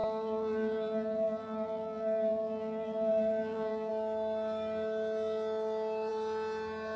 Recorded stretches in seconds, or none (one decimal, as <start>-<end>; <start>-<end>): 3.9-7.0